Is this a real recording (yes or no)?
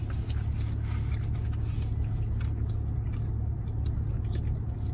yes